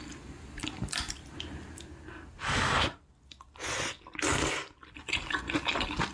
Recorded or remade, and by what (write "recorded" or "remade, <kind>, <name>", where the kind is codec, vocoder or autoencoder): recorded